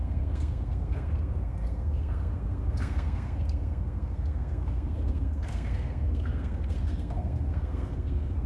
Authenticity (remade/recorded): remade